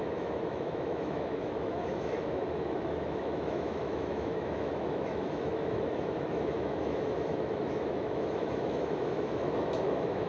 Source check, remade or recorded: remade